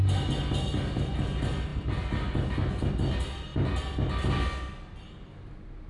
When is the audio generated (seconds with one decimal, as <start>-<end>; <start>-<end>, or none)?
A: none

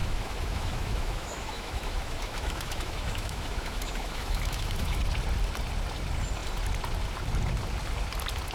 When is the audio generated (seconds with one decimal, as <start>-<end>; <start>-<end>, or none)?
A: 0.0-5.0

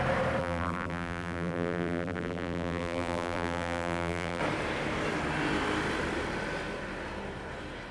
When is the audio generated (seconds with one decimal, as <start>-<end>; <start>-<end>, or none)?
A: 0.4-4.4

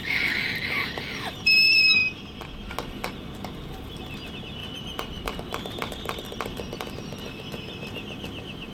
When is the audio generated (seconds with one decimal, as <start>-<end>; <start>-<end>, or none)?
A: 4.6-6.9

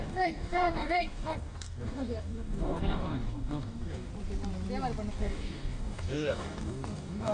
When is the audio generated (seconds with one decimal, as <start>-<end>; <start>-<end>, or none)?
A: 0.0-4.1; 5.1-7.3

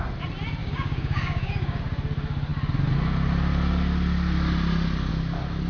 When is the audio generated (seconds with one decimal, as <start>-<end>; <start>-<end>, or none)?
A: 0.6-1.8

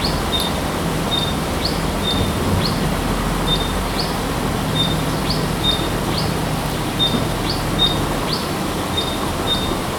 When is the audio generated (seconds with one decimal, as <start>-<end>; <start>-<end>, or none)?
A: none